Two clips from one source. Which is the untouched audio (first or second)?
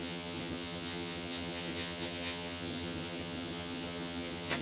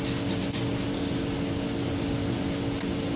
second